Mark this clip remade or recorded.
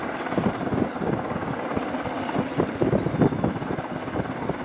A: recorded